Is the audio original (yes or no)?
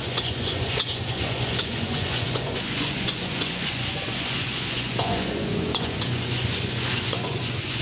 no